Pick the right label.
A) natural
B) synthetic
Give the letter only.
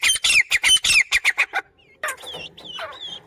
A